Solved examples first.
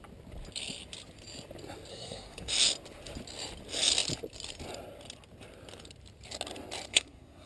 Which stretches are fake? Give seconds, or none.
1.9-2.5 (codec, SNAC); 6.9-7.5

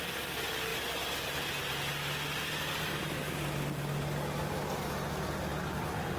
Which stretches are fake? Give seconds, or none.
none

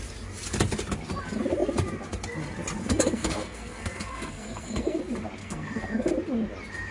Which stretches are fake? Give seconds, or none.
2.8-5.0 (codec, SNAC); 5.4-6.1